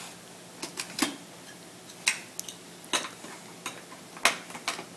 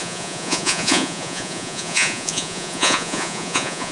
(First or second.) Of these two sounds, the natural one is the first